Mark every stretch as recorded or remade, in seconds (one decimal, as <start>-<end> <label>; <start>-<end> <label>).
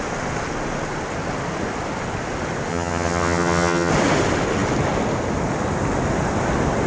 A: 0.0-2.7 recorded; 2.7-3.9 remade; 3.9-6.9 recorded